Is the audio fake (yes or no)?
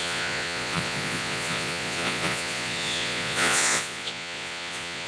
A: yes